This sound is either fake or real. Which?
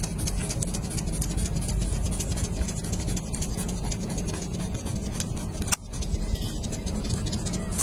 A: real